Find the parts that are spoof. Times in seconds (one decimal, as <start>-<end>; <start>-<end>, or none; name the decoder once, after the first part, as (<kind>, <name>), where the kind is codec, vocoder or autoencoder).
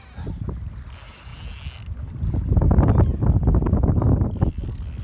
none